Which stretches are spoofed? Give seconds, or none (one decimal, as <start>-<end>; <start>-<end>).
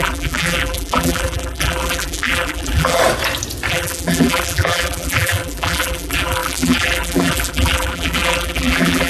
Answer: 0.0-3.0; 3.7-9.1